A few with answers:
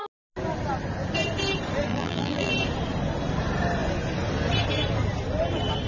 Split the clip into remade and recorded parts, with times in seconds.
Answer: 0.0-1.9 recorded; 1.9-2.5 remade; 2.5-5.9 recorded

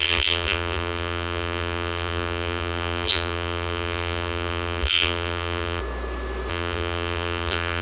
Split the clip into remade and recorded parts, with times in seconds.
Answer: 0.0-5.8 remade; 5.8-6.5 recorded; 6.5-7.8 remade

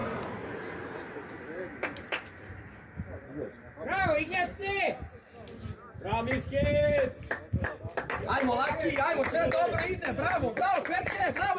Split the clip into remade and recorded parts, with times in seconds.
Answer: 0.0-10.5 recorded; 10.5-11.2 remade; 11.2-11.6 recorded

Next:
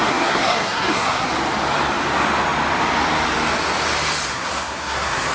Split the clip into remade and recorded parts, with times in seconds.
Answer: 0.0-1.3 remade; 1.3-4.3 recorded; 4.3-5.3 remade